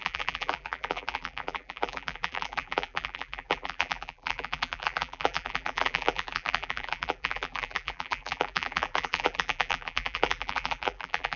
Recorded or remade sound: remade